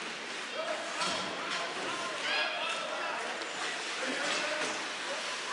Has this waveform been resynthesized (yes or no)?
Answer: no